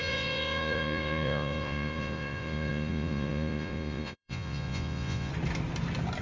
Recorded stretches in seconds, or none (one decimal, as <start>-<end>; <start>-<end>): 5.3-6.2